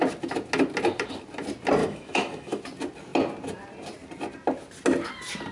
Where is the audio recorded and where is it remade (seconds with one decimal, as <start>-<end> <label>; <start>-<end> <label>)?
0.0-1.8 recorded; 1.8-2.6 remade; 2.6-5.5 recorded